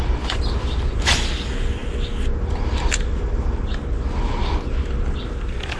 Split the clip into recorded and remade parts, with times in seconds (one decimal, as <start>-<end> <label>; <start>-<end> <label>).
0.0-5.8 recorded